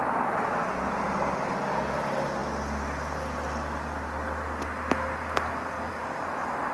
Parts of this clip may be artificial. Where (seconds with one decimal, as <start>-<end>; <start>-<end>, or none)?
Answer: none